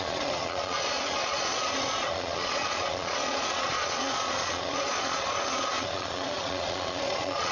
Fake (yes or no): yes